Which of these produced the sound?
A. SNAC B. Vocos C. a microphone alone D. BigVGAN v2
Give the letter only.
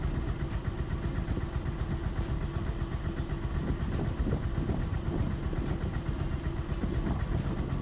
C